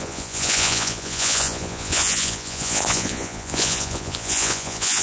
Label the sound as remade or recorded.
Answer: remade